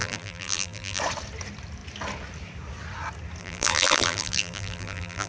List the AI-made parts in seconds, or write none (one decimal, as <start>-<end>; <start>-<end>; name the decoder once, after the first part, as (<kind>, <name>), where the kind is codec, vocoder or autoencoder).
0.0-1.0 (vocoder, BigVGAN v2); 3.4-5.3